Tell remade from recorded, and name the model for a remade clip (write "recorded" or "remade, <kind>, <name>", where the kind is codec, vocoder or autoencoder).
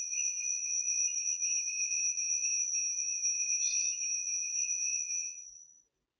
recorded